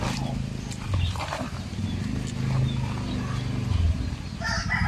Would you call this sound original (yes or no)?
yes